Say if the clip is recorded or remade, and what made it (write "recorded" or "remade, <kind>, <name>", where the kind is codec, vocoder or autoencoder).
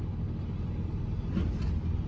recorded